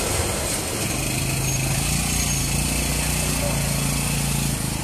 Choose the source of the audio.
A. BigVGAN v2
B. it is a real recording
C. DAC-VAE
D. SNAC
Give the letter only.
B